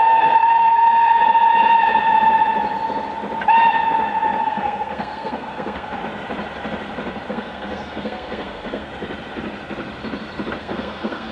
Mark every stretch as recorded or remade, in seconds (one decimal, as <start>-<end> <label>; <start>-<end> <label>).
0.0-1.2 remade; 1.2-4.4 recorded; 4.4-6.0 remade; 6.0-7.3 recorded; 7.3-8.9 remade; 8.9-10.6 recorded; 10.6-11.3 remade